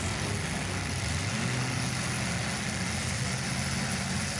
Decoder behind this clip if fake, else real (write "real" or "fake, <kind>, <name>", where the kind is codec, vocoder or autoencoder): real